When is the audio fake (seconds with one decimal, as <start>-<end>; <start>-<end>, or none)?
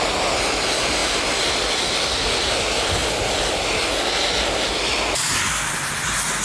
none